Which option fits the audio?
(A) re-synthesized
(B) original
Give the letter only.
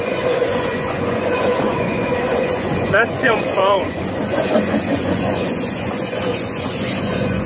A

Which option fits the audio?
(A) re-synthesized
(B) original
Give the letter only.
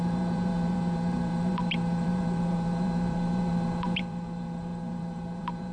A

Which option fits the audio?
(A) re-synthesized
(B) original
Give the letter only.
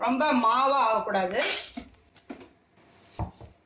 B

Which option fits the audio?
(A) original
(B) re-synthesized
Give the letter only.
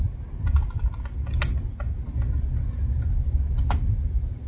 A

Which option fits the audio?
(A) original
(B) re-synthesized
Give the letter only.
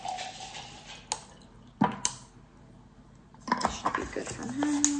A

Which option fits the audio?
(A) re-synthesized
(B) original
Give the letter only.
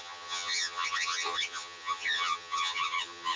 A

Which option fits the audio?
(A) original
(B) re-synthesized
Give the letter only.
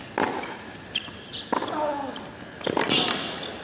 A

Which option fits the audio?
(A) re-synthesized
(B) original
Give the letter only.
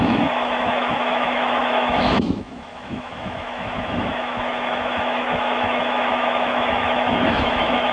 A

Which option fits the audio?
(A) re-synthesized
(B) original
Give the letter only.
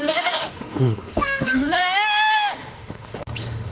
A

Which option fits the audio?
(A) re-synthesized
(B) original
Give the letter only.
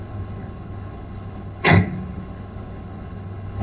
A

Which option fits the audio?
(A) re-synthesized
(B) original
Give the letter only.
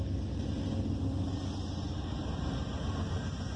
B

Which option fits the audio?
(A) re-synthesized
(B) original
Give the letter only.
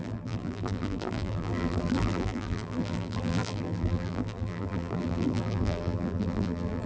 A